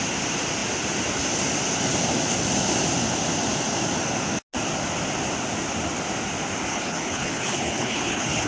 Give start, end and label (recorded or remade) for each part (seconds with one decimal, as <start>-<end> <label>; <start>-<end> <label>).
0.0-6.7 recorded; 6.7-8.5 remade